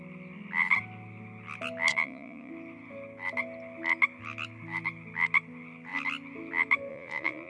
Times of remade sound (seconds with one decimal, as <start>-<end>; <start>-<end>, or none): 1.9-2.5; 6.9-7.5